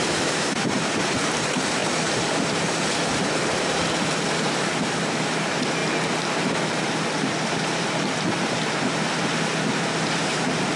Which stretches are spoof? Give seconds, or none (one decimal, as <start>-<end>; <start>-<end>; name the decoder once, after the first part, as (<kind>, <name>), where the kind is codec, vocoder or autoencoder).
0.0-5.8 (vocoder, BigVGAN v2); 6.7-10.8